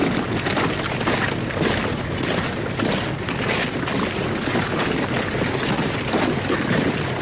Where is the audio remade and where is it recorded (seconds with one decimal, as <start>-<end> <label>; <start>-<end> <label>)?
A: 0.0-7.2 recorded